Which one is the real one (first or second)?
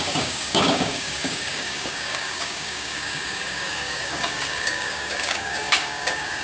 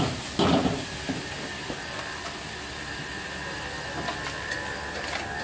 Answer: second